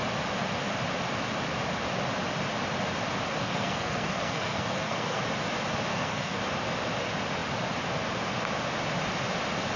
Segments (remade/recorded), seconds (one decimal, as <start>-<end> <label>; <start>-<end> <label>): 0.0-3.4 recorded; 3.4-5.2 remade; 5.2-5.9 recorded; 5.9-6.4 remade; 6.4-9.8 recorded